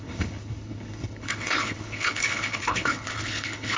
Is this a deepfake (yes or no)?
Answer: yes